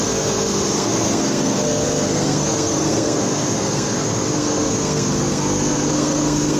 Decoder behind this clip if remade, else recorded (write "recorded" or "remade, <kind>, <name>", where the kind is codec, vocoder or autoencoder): remade, codec, SNAC